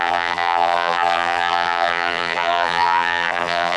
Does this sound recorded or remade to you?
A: remade